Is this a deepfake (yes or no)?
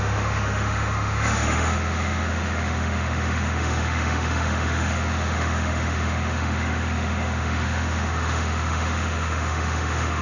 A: yes